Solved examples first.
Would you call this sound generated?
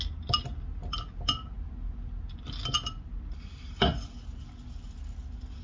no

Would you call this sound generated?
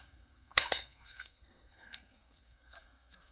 yes